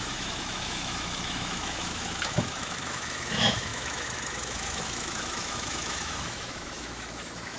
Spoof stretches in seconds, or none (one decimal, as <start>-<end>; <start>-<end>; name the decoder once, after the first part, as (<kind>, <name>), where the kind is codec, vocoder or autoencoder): 0.0-7.6 (autoencoder, DAC-VAE)